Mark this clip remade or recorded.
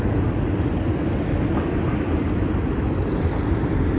recorded